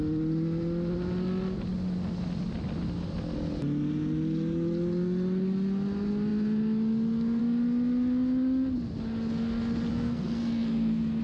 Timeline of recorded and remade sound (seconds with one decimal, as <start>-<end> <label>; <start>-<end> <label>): 0.0-9.9 recorded; 9.9-11.2 remade